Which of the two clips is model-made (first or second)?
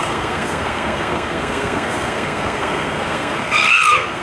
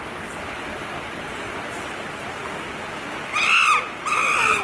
first